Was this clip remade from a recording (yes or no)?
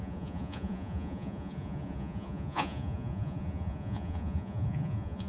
yes